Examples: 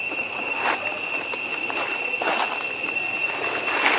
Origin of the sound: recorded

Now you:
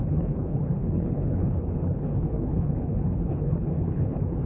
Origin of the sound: remade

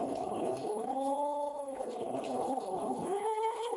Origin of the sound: remade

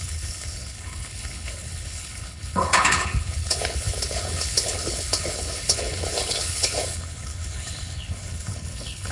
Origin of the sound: remade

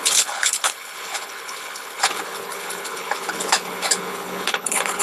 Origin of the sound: remade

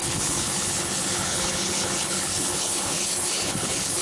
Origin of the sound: remade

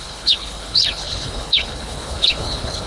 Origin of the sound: remade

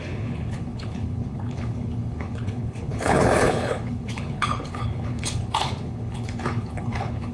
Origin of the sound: remade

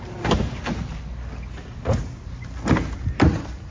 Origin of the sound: recorded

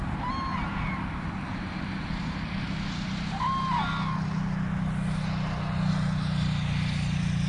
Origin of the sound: recorded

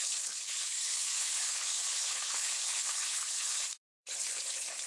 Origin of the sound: remade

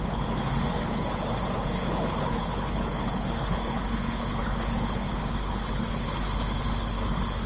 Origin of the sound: remade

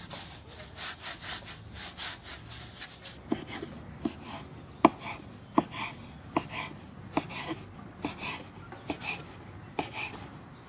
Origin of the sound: recorded